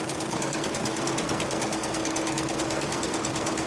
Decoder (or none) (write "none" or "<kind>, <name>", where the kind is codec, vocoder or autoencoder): codec, SNAC